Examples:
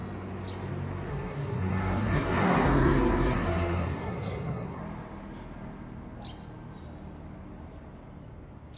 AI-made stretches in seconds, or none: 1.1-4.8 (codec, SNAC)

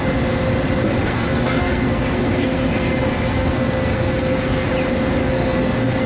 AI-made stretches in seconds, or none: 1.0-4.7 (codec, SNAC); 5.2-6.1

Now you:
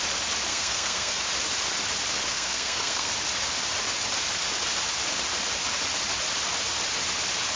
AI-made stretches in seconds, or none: 0.5-1.2 (codec, SNAC); 2.3-3.1